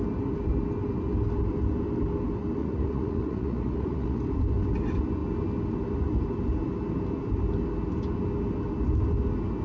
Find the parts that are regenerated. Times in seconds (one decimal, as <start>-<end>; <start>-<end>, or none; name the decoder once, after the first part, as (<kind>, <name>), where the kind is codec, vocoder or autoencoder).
2.6-4.2 (vocoder, Vocos)